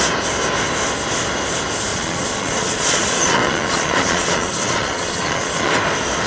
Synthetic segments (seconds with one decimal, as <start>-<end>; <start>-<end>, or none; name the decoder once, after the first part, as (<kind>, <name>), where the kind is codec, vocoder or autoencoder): 1.9-5.7 (vocoder, Vocos)